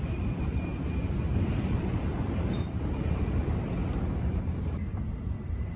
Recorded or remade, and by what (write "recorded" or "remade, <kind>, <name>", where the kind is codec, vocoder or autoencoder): remade, vocoder, BigVGAN v2